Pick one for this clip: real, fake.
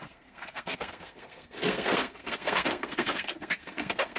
fake